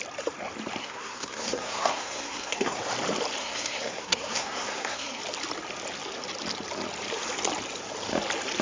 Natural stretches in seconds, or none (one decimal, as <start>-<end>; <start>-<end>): 0.0-0.8; 2.8-3.4; 5.2-8.6